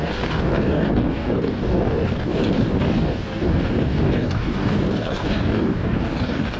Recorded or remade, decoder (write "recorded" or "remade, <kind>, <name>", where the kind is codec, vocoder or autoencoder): remade, codec, DAC